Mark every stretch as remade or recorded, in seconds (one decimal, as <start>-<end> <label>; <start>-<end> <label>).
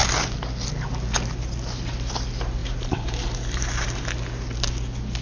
0.0-2.6 recorded; 2.6-4.0 remade; 4.0-5.2 recorded